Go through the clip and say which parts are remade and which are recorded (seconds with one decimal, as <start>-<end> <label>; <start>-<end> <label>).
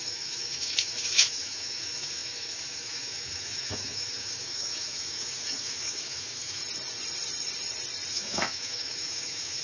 0.0-6.6 remade; 6.6-8.1 recorded; 8.1-9.6 remade